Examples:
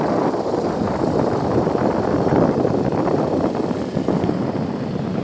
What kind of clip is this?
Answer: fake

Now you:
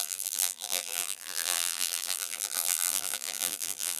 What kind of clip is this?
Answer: fake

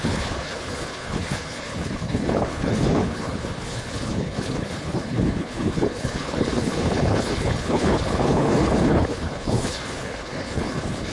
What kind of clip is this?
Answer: fake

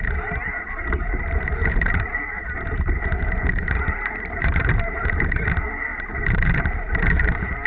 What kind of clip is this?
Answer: fake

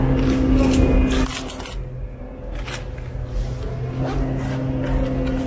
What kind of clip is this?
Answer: real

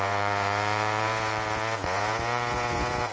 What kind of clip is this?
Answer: fake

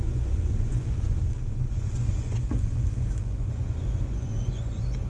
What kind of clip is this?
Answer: fake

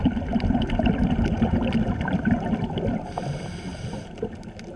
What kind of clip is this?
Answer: real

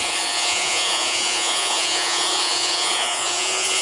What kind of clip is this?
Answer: fake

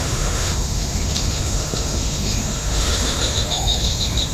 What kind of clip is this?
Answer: fake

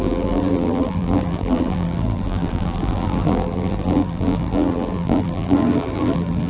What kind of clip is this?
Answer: fake